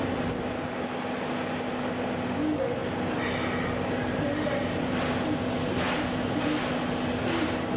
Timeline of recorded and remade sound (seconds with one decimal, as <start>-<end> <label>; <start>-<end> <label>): 0.0-7.8 recorded